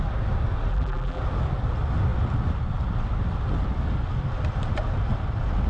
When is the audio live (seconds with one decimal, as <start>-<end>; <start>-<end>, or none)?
0.0-0.7; 1.2-5.7